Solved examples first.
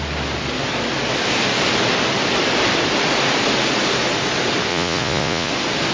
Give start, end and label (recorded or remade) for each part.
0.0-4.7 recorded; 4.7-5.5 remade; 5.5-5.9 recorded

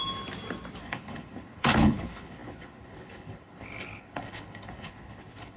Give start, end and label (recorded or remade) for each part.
0.0-0.8 recorded; 0.8-5.6 remade

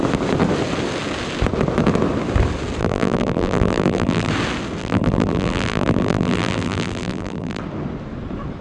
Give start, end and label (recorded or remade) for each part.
0.0-2.8 recorded; 2.8-4.3 remade; 4.3-4.8 recorded; 4.8-7.6 remade; 7.6-8.6 recorded

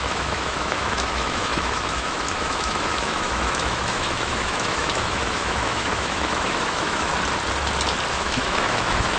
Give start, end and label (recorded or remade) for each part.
0.0-7.1 remade; 7.1-8.1 recorded; 8.1-9.2 remade

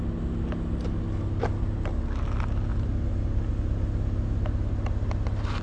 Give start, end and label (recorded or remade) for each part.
0.0-2.7 recorded; 2.7-3.5 remade; 3.5-5.6 recorded

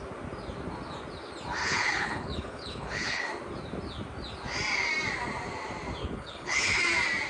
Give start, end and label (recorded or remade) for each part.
0.0-1.6 recorded; 1.6-3.2 remade; 3.2-6.0 recorded; 6.0-6.8 remade; 6.8-7.3 recorded